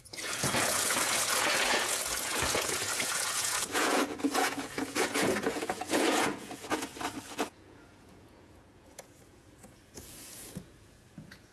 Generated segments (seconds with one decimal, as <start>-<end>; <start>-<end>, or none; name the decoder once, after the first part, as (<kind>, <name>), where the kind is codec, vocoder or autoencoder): 0.0-6.9 (vocoder, Vocos); 7.5-11.5